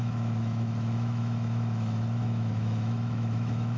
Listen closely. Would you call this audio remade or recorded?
remade